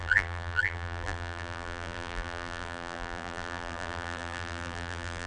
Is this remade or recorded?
remade